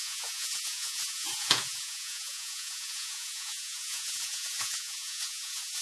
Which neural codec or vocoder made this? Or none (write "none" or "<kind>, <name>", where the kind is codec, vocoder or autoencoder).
vocoder, Vocos